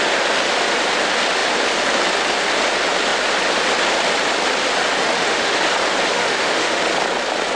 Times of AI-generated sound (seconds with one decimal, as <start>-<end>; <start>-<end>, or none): 5.0-5.6; 6.1-6.8